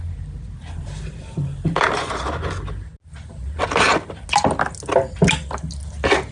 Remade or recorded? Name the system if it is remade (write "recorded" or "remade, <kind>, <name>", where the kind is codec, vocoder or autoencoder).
recorded